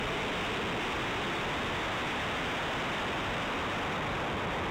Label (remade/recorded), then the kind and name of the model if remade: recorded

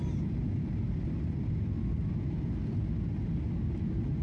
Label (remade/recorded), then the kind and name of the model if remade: recorded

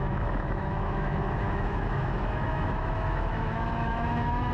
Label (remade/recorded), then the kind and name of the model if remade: remade, autoencoder, DAC-VAE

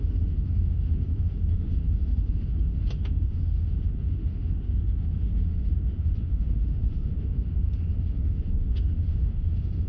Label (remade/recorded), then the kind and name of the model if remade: remade, autoencoder, DAC-VAE